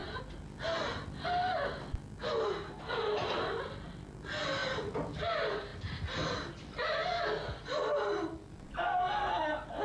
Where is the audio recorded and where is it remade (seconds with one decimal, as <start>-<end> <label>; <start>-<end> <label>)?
0.0-4.6 recorded; 4.6-5.3 remade; 5.3-5.7 recorded; 5.7-6.3 remade; 6.3-7.0 recorded; 7.0-8.6 remade; 8.6-9.8 recorded